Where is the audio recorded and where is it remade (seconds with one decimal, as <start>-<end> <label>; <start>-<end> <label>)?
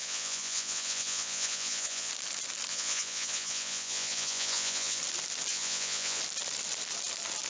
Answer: 0.0-2.1 remade; 2.1-2.7 recorded; 2.7-5.0 remade; 5.0-5.5 recorded; 5.5-6.2 remade; 6.2-7.5 recorded